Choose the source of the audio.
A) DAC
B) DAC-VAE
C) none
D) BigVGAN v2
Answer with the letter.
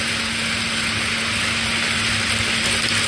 C